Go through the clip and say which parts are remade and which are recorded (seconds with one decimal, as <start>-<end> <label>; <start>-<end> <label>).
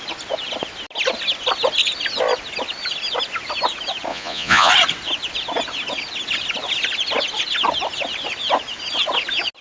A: 0.0-4.1 recorded; 4.1-4.7 remade; 4.7-9.6 recorded